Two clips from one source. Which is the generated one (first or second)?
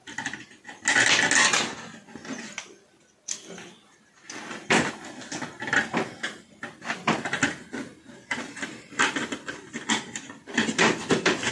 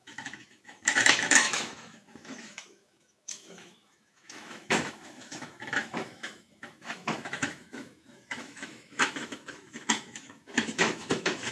second